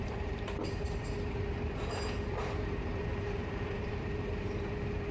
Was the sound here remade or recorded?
remade